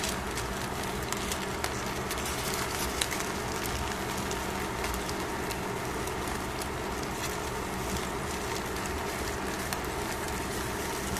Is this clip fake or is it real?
real